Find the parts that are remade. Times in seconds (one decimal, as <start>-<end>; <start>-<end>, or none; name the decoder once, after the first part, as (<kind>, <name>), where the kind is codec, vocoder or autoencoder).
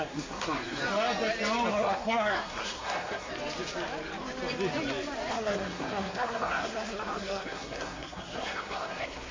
0.0-0.8 (codec, SNAC); 1.7-3.3; 5.3-9.3